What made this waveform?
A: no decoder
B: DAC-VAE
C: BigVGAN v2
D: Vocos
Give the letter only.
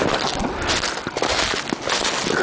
A